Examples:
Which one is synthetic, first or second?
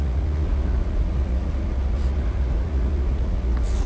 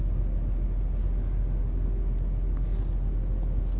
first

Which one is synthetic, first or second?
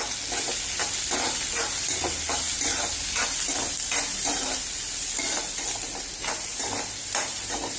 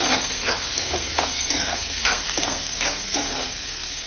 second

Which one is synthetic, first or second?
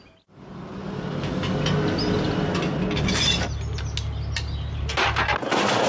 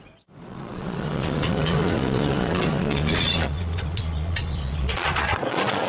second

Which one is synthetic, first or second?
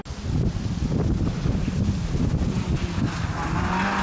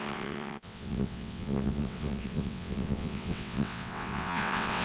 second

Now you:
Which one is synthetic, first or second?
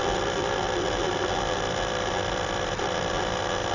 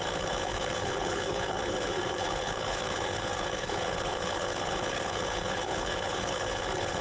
second